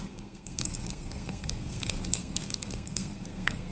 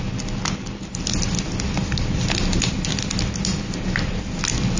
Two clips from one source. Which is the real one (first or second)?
second